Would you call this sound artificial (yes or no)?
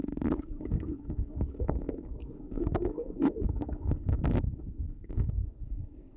yes